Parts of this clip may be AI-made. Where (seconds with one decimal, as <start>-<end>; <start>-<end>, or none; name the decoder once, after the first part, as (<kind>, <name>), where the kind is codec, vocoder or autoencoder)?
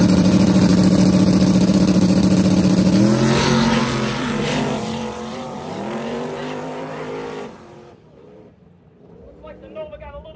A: 0.0-0.7 (vocoder, BigVGAN v2); 4.2-10.4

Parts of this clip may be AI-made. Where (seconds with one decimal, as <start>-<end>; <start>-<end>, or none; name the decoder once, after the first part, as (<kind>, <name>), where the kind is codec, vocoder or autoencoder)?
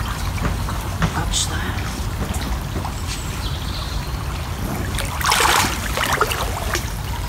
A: none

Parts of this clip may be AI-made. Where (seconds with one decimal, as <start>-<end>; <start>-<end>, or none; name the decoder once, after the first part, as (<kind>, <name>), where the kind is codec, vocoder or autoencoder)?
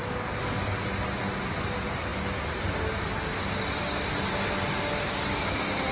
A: none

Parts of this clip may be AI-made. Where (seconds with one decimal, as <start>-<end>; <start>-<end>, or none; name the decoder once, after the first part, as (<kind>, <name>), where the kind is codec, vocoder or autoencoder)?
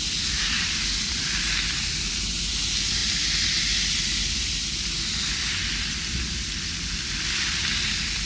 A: none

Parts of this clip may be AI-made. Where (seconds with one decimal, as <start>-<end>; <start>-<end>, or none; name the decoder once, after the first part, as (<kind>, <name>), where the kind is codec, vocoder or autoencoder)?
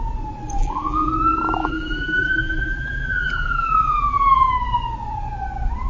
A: 0.6-1.1 (vocoder, BigVGAN v2); 1.6-4.5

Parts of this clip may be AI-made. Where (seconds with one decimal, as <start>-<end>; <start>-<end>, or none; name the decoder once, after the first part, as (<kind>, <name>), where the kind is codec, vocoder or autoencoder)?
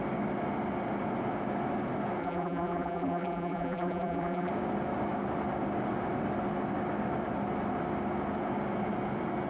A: 2.2-4.5 (vocoder, BigVGAN v2)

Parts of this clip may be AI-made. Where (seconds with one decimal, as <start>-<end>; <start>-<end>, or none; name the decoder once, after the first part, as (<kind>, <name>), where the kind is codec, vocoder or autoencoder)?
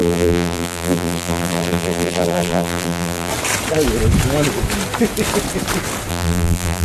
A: 0.0-3.3 (vocoder, BigVGAN v2); 6.1-6.8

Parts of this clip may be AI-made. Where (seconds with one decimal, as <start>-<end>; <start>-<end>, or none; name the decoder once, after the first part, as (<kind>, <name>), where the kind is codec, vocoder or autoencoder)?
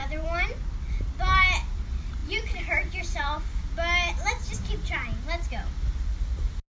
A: 0.0-0.6 (vocoder, BigVGAN v2); 2.2-3.0